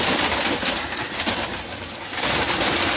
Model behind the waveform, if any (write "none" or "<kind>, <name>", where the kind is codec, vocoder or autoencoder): none